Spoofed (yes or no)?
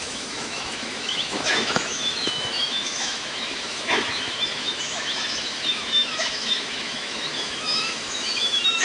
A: yes